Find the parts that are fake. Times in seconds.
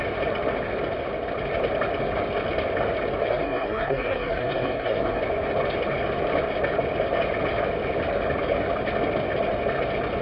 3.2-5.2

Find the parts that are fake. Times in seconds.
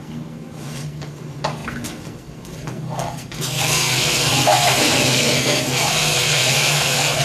0.0-7.2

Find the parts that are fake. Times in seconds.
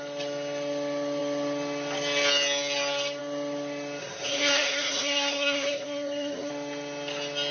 4.0-6.5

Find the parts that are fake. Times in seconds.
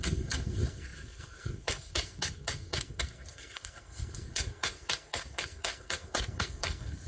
0.0-7.1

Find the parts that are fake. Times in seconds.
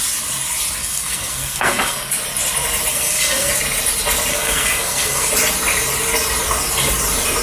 0.8-2.1; 2.9-3.5; 4.3-5.3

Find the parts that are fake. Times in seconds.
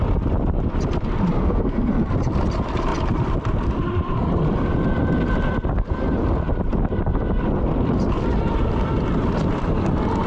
1.4-2.1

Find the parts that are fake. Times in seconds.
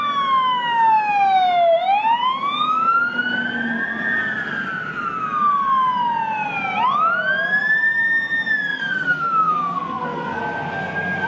8.7-10.4